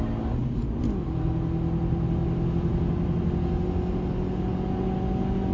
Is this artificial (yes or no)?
no